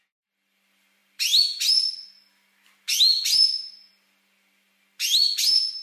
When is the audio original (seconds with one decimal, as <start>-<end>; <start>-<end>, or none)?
0.0-5.8